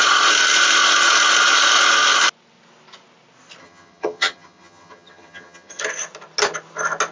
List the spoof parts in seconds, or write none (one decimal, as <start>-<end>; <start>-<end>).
3.6-5.8